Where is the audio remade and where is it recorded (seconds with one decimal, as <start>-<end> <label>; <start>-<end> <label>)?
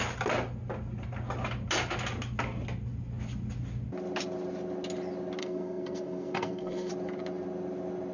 0.0-5.4 recorded; 5.4-6.9 remade; 6.9-8.1 recorded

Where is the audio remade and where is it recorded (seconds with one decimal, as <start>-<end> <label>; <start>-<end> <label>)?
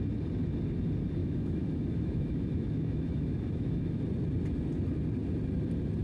0.0-1.2 recorded; 1.2-4.0 remade; 4.0-6.0 recorded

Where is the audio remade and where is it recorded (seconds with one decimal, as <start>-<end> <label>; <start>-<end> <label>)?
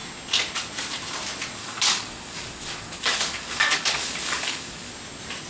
0.0-1.6 recorded; 1.6-4.9 remade; 4.9-5.5 recorded